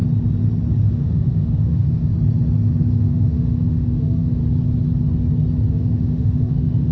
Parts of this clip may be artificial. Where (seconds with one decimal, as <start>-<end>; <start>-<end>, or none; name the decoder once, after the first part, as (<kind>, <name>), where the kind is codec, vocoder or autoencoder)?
0.9-2.1 (autoencoder, DAC-VAE); 2.9-4.4; 5.7-6.9